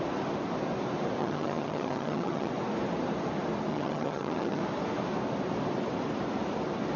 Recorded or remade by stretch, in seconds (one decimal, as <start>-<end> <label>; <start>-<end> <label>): 0.0-1.2 recorded; 1.2-2.5 remade; 2.5-3.7 recorded; 3.7-4.6 remade; 4.6-7.0 recorded